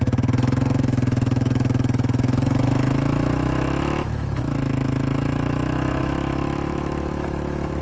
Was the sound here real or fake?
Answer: fake